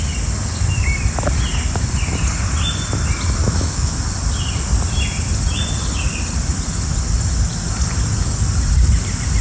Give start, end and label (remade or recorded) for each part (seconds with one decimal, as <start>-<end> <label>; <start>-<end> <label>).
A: 0.0-3.4 recorded; 3.4-4.0 remade; 4.0-9.4 recorded